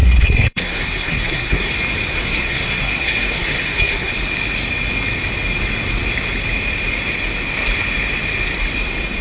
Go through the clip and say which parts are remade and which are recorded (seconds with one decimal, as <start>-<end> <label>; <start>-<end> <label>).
0.0-1.7 remade; 1.7-2.1 recorded; 2.1-4.1 remade; 4.1-9.2 recorded